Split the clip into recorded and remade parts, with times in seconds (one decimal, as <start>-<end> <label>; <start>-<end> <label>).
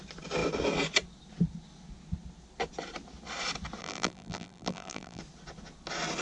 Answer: 0.0-3.8 recorded; 3.8-5.2 remade; 5.2-6.2 recorded